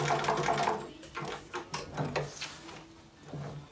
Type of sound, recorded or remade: recorded